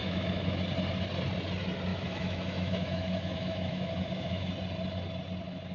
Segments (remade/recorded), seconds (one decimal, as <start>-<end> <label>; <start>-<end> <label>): 0.0-0.6 remade; 0.6-1.9 recorded; 1.9-4.5 remade; 4.5-5.7 recorded